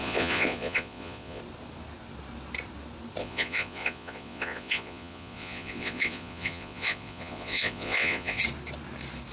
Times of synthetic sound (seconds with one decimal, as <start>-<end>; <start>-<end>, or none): 0.0-1.4; 3.2-8.4